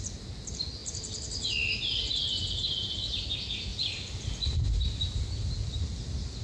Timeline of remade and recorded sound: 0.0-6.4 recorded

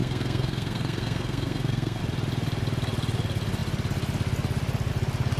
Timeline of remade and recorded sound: 0.0-2.0 remade; 2.0-5.4 recorded

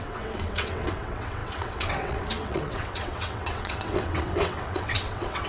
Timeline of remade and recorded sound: 0.0-5.5 remade